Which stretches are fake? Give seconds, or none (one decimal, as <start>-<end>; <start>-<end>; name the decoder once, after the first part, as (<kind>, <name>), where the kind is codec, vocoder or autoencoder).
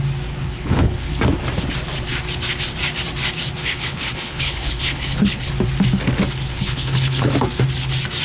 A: 0.4-1.1 (codec, HILCodec); 3.6-5.5; 6.5-7.3